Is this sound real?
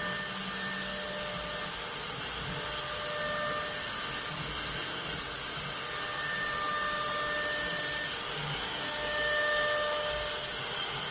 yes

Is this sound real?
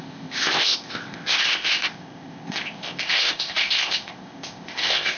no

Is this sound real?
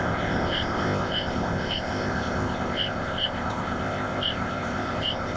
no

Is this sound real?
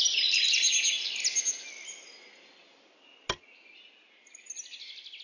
yes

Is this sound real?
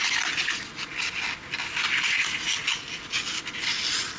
yes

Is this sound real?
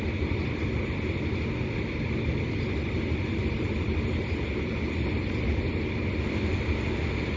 yes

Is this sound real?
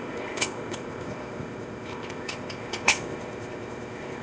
no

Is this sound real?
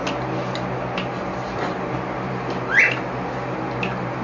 yes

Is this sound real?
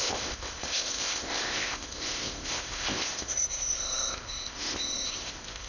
no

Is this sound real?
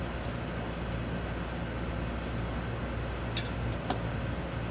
yes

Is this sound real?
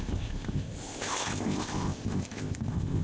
no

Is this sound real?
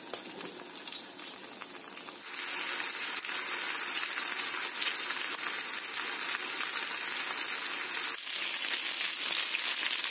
yes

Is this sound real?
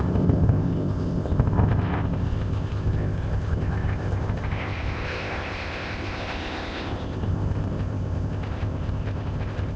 no